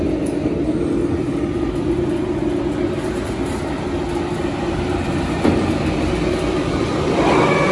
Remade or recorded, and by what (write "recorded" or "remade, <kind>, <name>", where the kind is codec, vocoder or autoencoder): remade, vocoder, BigVGAN v2